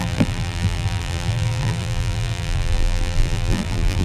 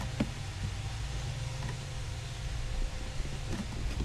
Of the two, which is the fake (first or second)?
first